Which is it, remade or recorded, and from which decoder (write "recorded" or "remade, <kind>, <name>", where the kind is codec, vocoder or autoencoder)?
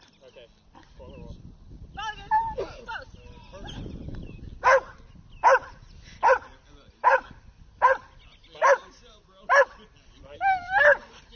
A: recorded